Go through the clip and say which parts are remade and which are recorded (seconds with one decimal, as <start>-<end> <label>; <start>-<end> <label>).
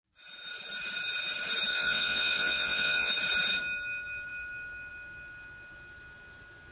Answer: 0.0-1.7 recorded; 1.7-3.1 remade; 3.1-6.7 recorded